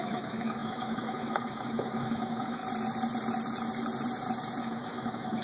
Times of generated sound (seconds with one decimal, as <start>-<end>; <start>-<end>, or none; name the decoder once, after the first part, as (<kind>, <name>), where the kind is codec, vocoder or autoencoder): 0.0-2.6 (autoencoder, DAC-VAE); 4.6-5.4